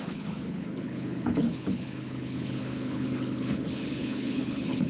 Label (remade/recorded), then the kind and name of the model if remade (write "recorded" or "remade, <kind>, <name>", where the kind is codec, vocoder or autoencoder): remade, codec, HILCodec